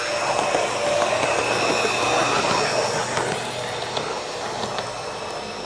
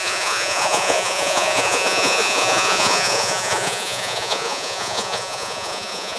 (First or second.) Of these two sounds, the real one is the first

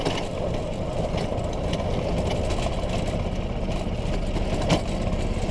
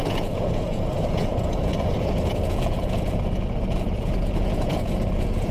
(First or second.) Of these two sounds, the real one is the first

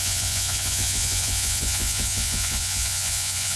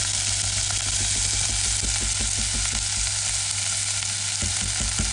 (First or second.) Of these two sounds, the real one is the second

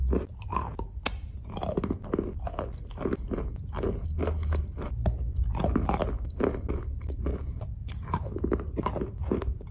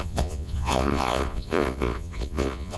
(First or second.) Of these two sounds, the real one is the first